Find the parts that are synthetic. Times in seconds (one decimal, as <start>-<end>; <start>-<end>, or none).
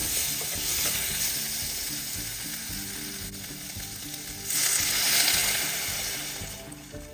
none